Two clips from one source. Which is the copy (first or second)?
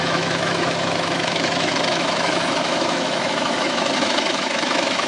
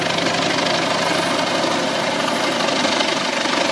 first